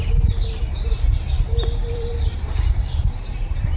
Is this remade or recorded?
remade